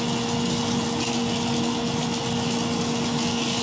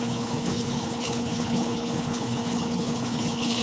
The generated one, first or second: second